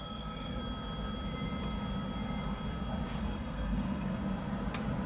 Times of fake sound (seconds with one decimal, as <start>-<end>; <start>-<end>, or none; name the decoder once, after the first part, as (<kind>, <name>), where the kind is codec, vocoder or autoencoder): 0.0-0.6 (codec, SNAC); 3.2-4.2